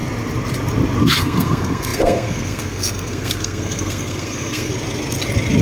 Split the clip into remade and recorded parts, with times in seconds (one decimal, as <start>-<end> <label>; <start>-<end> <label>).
0.0-1.0 recorded; 1.0-4.7 remade; 4.7-5.6 recorded